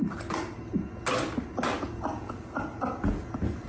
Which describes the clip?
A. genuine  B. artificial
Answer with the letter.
A